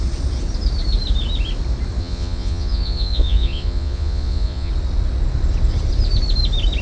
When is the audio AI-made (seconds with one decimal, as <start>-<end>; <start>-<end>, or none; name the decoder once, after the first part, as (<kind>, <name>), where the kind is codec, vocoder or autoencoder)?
2.0-4.7 (vocoder, Vocos)